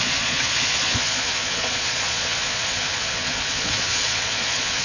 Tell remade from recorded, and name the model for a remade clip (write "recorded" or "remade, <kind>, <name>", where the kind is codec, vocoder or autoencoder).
remade, vocoder, Vocos